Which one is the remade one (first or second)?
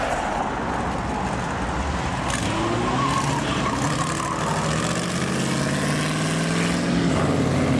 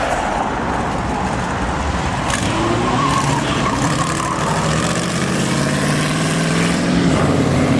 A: second